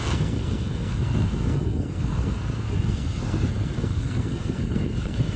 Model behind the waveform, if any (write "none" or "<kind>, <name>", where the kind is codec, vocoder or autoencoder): codec, SNAC